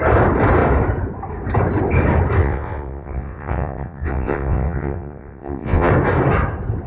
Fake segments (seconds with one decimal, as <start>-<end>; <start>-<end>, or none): 2.4-5.9